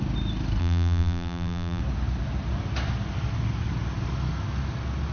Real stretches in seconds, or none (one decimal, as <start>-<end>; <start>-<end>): 0.0-0.6; 1.8-5.1